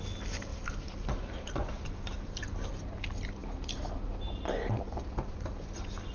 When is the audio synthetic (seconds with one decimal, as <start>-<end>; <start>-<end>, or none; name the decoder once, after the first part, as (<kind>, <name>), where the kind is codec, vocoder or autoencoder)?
none